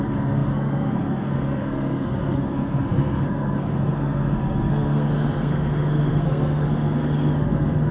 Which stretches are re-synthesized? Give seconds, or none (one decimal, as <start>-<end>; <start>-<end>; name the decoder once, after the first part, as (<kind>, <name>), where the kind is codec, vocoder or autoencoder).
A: 0.0-7.9 (codec, SNAC)